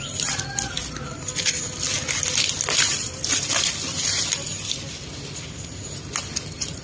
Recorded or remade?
recorded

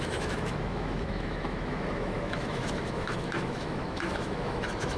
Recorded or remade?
remade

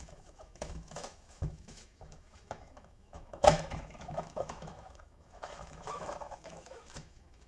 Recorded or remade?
remade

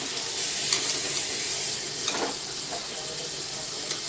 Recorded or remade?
recorded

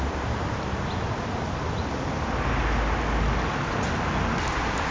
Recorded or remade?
recorded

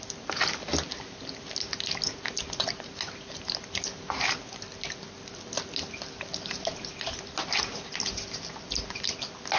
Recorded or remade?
recorded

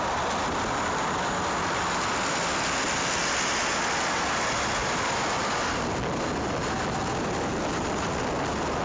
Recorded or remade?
recorded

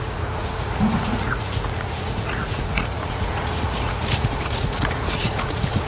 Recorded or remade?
remade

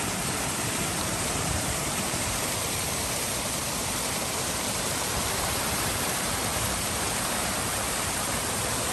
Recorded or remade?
remade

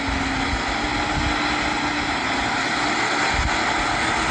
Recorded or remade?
recorded